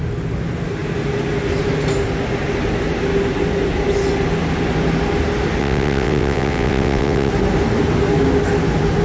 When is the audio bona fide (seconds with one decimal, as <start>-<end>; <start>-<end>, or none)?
0.0-5.6; 7.3-9.0